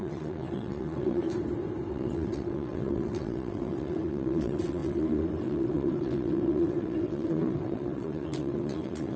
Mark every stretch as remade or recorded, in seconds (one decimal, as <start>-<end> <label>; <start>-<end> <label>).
0.0-1.3 remade; 1.3-1.9 recorded; 1.9-9.2 remade